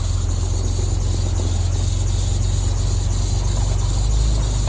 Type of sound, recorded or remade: recorded